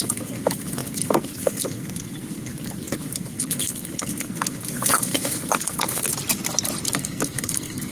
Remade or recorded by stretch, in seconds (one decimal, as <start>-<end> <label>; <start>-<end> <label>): 0.0-6.1 remade; 6.1-6.9 recorded; 6.9-7.9 remade